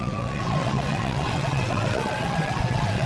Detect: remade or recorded remade